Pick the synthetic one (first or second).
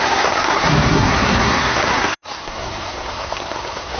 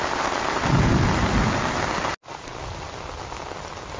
first